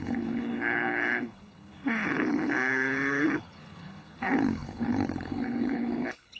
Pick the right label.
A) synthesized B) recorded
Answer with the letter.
A